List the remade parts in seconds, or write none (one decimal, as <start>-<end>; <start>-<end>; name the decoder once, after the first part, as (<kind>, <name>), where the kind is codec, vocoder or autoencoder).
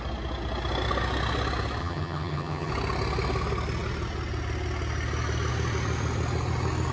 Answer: 1.8-2.7 (vocoder, HiFi-GAN)